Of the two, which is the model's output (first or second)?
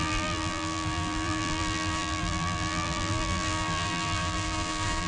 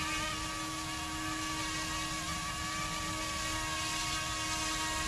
first